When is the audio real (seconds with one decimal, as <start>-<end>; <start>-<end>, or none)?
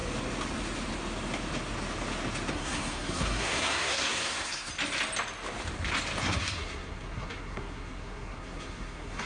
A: 0.0-2.5; 4.7-6.2